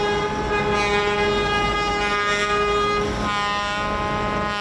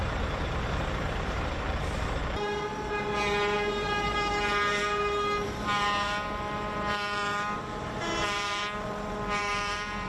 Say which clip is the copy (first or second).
second